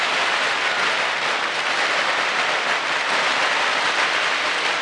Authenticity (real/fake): real